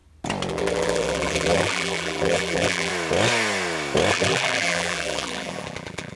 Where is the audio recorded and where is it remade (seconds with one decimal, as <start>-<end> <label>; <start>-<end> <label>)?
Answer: 0.0-0.5 recorded; 0.5-2.9 remade; 2.9-4.1 recorded; 4.1-6.2 remade